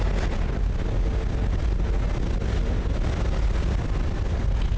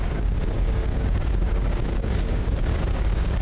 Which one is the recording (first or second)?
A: first